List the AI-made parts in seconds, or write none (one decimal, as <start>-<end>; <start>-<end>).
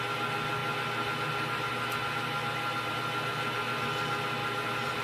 4.4-5.0